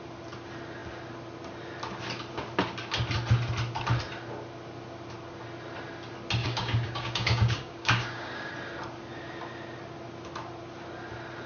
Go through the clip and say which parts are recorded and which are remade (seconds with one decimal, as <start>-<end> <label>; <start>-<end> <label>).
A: 0.0-6.4 recorded; 6.4-8.5 remade; 8.5-11.5 recorded